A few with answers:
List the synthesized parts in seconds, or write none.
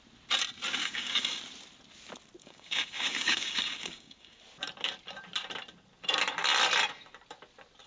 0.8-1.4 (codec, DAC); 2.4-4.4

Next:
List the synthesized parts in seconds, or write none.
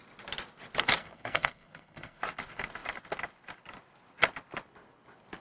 1.0-2.2 (codec, SNAC)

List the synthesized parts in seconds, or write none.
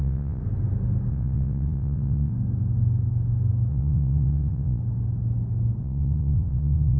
0.0-0.4 (vocoder, WaveNeXt); 1.1-2.3; 3.7-4.8; 5.8-7.0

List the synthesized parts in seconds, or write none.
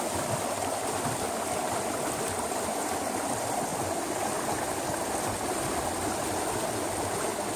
3.7-4.3 (vocoder, BigVGAN v2)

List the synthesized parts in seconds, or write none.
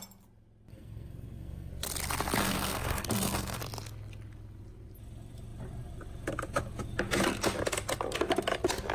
0.7-1.7 (codec, SNAC); 2.4-3.6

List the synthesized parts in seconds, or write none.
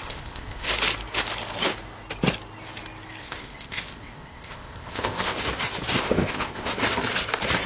0.0-0.7 (codec, ZipCodec); 3.2-5.4; 6.0-6.7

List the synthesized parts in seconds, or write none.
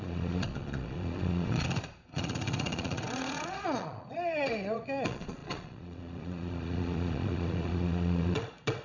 0.0-8.8 (vocoder, Vocos)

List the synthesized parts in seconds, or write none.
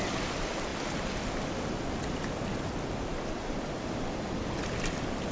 none